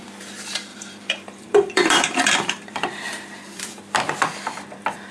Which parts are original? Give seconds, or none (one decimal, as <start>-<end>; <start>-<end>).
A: 0.0-0.7; 3.8-5.1